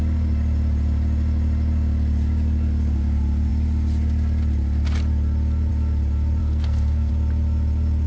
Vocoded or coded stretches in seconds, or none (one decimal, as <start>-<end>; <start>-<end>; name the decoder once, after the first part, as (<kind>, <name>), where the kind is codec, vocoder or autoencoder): 6.4-7.1 (codec, SNAC)